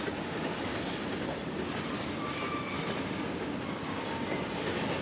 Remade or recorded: recorded